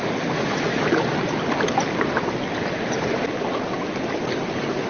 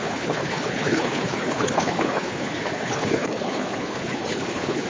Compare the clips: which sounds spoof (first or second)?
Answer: second